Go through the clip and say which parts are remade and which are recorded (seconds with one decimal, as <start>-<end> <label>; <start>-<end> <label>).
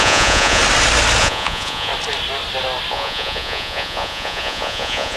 0.0-0.6 remade; 0.6-1.2 recorded; 1.2-1.9 remade; 1.9-2.9 recorded; 2.9-5.2 remade